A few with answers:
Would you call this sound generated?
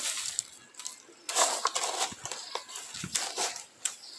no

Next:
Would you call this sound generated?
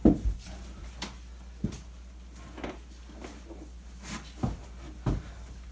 no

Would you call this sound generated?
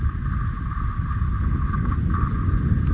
no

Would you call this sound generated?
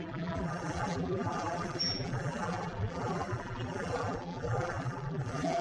yes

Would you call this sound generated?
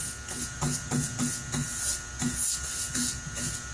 no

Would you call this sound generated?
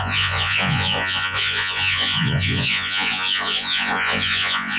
yes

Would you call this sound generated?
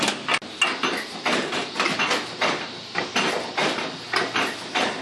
no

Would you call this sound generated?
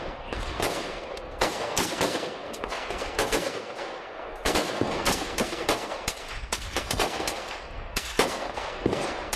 yes